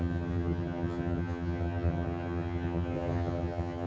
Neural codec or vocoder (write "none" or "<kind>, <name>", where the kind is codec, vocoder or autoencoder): vocoder, HiFi-GAN